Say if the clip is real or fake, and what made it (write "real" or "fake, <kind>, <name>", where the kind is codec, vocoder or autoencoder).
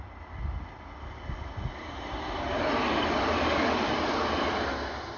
real